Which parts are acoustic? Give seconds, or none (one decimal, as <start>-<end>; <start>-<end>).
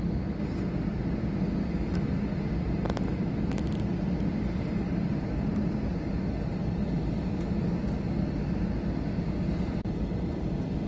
0.0-5.9; 6.9-10.9